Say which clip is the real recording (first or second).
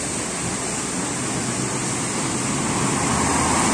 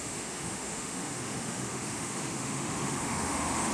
first